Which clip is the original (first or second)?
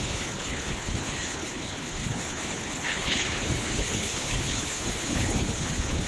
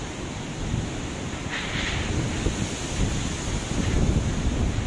second